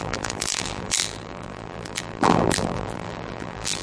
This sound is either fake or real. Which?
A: fake